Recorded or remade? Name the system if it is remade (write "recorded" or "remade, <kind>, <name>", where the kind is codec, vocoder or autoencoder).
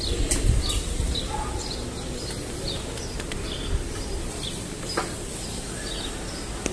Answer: recorded